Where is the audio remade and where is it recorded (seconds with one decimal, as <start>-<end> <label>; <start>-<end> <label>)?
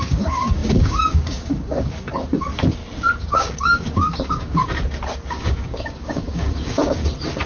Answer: 0.0-2.8 remade; 2.8-3.3 recorded; 3.3-4.6 remade; 4.6-5.3 recorded; 5.3-7.0 remade; 7.0-7.5 recorded